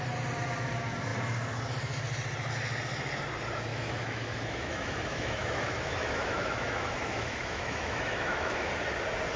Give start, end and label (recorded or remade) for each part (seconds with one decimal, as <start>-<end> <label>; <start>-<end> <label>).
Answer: 0.0-3.7 recorded; 3.7-8.7 remade; 8.7-9.4 recorded